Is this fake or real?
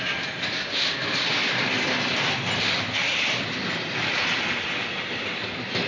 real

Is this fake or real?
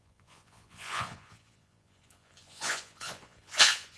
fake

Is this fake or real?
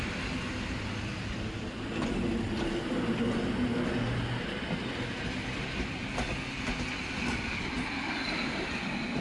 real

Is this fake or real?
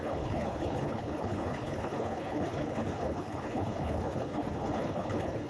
fake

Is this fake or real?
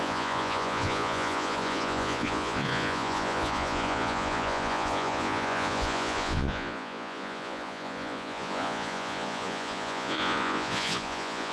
fake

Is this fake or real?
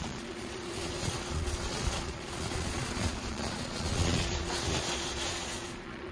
fake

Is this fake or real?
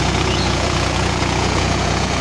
fake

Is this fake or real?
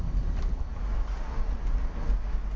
real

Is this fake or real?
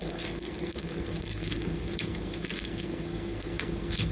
fake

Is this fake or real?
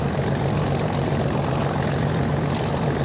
fake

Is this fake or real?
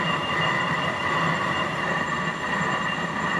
fake